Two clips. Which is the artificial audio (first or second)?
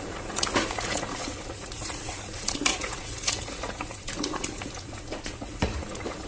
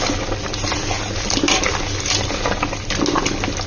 first